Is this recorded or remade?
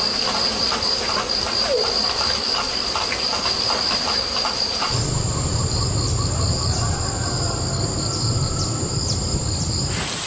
remade